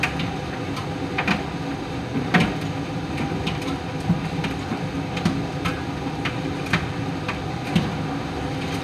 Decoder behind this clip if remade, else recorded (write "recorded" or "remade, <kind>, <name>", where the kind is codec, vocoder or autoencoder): recorded